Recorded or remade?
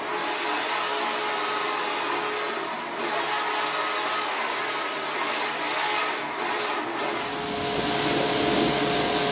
recorded